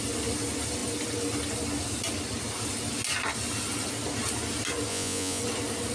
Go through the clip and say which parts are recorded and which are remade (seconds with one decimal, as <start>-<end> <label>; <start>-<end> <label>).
0.0-4.9 recorded; 4.9-5.4 remade; 5.4-5.9 recorded